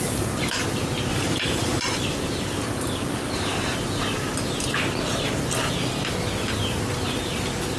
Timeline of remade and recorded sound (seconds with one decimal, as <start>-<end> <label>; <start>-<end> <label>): 0.0-1.1 recorded; 1.1-1.8 remade; 1.8-7.8 recorded